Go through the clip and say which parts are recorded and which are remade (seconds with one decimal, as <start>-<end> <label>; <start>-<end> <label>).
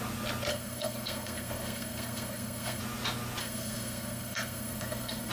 0.0-0.5 recorded; 0.5-2.8 remade; 2.8-3.4 recorded; 3.4-5.3 remade